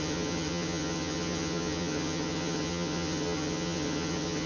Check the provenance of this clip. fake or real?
fake